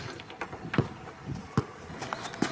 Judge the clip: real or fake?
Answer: real